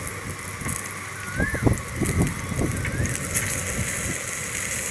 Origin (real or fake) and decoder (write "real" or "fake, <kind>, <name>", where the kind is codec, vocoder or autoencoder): real